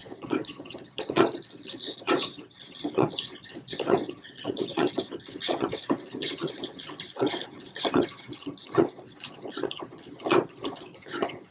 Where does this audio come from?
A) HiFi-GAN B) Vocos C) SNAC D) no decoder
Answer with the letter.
B